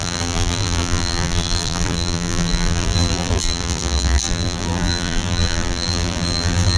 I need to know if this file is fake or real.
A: fake